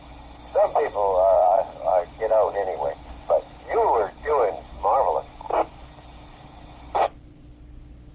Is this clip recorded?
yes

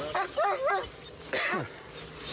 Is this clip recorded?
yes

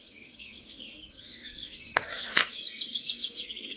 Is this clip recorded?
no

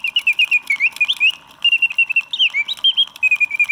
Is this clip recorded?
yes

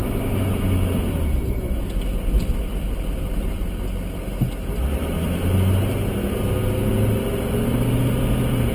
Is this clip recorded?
yes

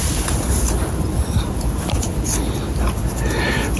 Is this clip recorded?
yes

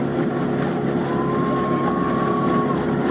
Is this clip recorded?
yes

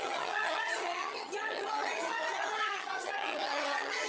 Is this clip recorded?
no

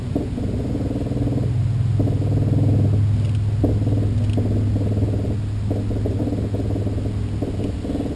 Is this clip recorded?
yes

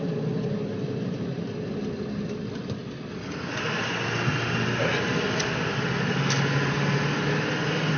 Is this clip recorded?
yes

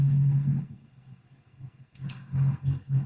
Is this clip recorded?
no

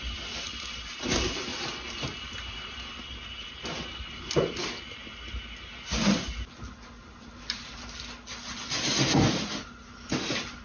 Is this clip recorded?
yes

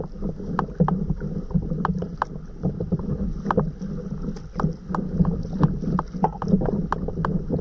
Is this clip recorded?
yes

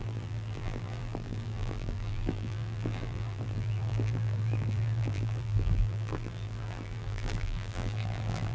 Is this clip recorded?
no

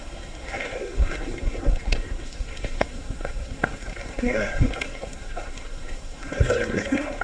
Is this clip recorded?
no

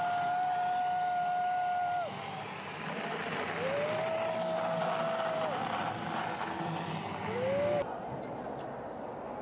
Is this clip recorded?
yes